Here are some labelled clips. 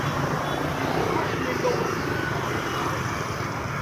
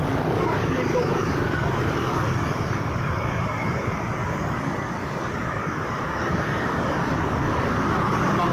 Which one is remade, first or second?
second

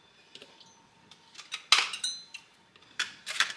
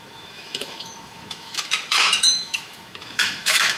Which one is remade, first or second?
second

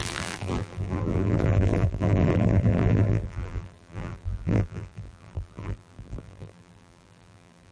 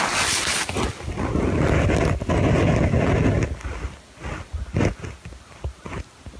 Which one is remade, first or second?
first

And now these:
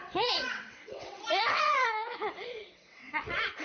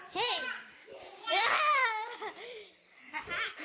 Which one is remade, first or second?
first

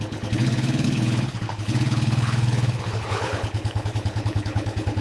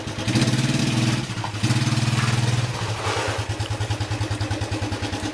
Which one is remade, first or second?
first